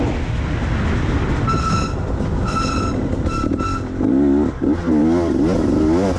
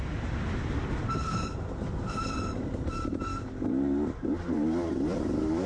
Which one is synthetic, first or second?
second